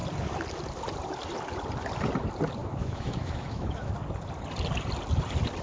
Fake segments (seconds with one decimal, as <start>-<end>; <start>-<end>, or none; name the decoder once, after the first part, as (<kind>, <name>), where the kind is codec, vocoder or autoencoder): 2.6-3.9 (autoencoder, DAC-VAE)